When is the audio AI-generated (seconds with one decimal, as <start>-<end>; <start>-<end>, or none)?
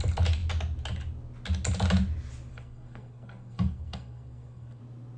2.5-4.8